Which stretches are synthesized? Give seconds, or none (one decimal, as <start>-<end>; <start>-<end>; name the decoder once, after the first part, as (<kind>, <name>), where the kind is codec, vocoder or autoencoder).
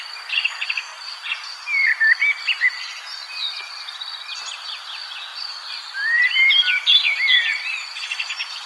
0.0-8.7 (vocoder, BigVGAN v2)